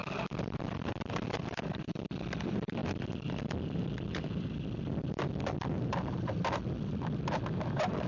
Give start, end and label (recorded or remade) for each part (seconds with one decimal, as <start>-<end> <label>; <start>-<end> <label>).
0.0-1.4 recorded; 1.4-8.1 remade